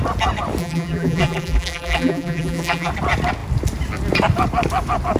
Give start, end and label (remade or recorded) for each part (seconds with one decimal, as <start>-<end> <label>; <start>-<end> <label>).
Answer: 0.0-0.6 recorded; 0.6-2.9 remade; 2.9-5.2 recorded